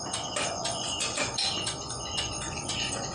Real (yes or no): no